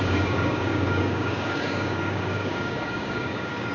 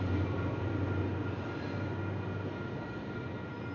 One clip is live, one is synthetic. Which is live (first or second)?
second